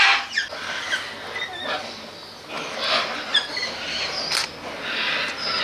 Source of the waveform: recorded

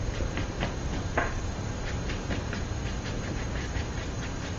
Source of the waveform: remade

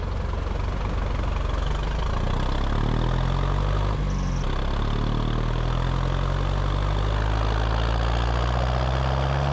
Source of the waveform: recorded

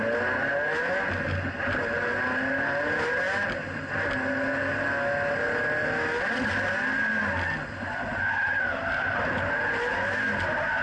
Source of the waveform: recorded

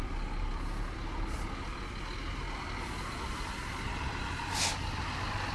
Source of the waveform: recorded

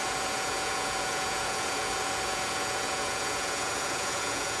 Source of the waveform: remade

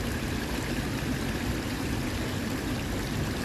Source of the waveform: remade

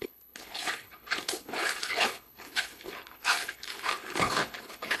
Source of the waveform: remade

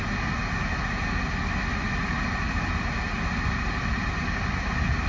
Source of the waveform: recorded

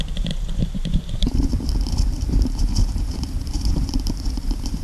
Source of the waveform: remade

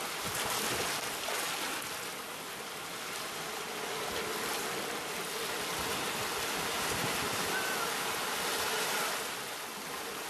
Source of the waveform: recorded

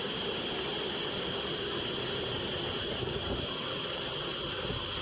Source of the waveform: recorded